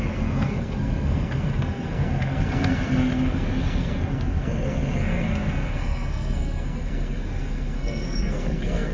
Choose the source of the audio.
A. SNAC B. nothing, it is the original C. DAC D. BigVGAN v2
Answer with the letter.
A